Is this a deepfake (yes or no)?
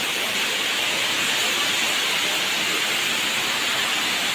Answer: no